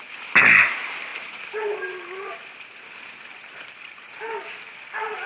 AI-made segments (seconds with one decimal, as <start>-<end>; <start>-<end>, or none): none